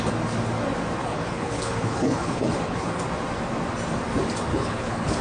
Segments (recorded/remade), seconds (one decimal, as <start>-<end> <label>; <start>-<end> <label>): 0.0-1.0 recorded; 1.0-3.0 remade; 3.0-4.5 recorded; 4.5-5.2 remade